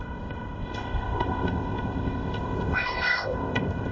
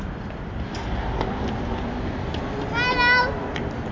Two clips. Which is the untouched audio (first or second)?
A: second